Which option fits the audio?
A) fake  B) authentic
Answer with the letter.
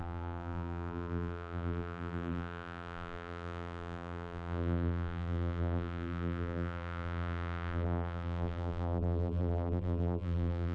A